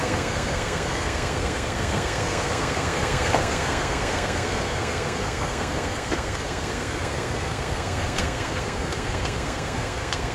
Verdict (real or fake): fake